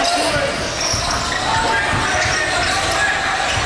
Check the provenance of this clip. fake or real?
real